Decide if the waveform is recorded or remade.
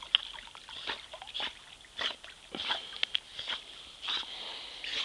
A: recorded